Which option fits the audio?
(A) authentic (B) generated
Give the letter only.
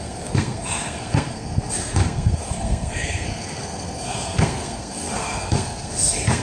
B